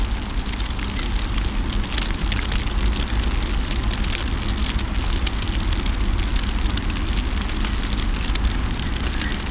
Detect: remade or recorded recorded